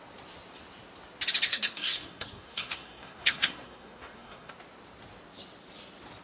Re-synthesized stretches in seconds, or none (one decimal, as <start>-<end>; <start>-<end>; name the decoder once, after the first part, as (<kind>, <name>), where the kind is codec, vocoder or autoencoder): 1.5-4.5 (codec, SNAC)